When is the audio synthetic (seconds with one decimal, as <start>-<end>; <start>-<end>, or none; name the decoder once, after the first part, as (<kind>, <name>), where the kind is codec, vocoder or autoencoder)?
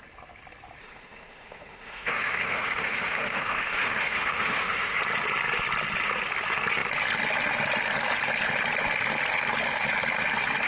0.8-5.0 (autoencoder, DAC-VAE)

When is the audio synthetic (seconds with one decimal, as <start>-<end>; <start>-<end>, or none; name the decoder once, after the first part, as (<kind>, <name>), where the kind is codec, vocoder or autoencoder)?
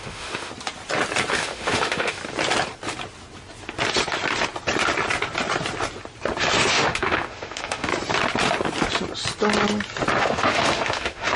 0.0-0.5 (autoencoder, DAC-VAE); 1.3-2.2; 6.7-7.9; 10.2-11.4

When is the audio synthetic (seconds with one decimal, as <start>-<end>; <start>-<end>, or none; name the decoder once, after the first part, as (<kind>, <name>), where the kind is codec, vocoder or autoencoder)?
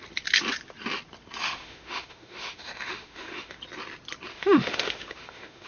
1.4-3.6 (autoencoder, DAC-VAE); 4.3-5.7